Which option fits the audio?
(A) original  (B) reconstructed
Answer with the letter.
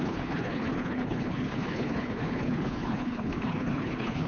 B